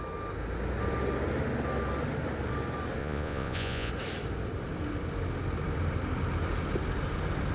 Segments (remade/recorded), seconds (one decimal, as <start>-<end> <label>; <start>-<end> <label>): 0.0-3.0 recorded; 3.0-3.9 remade; 3.9-7.5 recorded